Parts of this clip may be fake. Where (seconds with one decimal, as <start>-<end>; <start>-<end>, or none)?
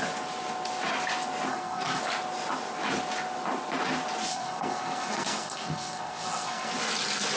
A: 1.5-2.0; 4.3-6.7